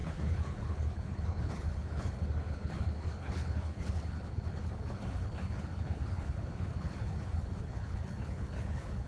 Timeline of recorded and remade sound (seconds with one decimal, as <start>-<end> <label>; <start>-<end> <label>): 0.0-9.1 remade